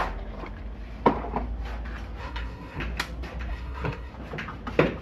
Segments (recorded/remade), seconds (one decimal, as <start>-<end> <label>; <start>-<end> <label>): 0.0-2.2 recorded; 2.2-2.8 remade; 2.8-3.5 recorded; 3.5-4.1 remade; 4.1-5.0 recorded